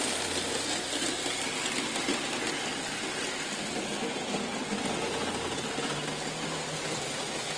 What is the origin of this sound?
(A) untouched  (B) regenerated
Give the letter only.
A